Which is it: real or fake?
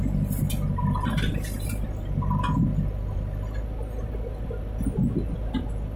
real